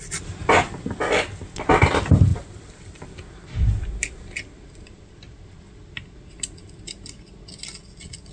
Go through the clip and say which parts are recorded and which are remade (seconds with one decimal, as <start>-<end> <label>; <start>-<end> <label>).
0.0-2.3 recorded; 2.3-5.6 remade; 5.6-8.3 recorded

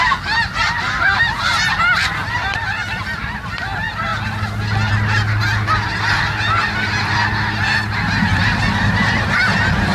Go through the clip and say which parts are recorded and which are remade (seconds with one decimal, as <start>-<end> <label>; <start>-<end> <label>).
0.0-9.9 recorded